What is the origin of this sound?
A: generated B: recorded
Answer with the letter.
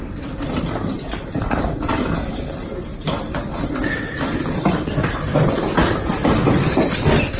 B